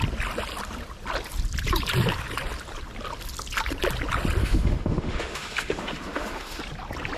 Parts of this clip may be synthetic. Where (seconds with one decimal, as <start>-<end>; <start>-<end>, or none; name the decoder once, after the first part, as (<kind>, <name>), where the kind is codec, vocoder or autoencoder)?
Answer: 4.4-6.6 (autoencoder, DAC-VAE)